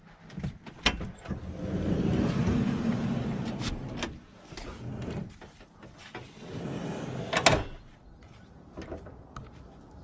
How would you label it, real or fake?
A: real